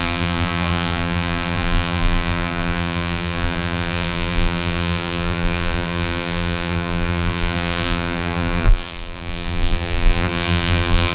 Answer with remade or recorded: remade